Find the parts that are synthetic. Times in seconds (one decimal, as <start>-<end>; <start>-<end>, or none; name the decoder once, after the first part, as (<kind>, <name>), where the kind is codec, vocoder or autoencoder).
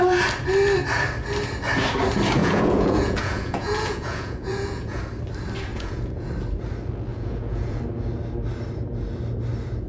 2.4-5.0 (vocoder, Vocos); 5.7-6.3; 7.1-7.8